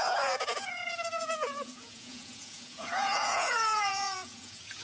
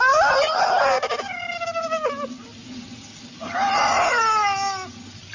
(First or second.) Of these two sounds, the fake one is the first